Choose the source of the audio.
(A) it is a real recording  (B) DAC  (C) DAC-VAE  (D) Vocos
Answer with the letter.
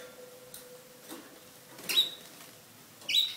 A